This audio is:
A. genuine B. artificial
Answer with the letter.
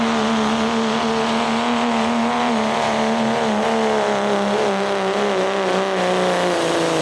A